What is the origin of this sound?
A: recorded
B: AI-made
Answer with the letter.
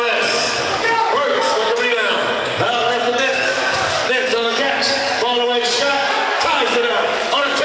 B